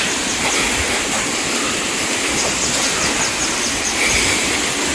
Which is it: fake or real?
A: real